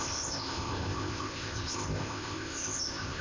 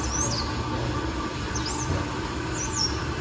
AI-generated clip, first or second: first